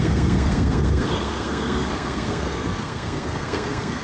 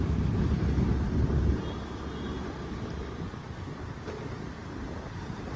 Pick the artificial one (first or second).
first